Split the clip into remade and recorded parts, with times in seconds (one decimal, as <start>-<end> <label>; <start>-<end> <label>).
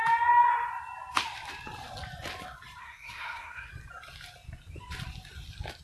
0.0-2.8 recorded; 2.8-3.7 remade; 3.7-5.8 recorded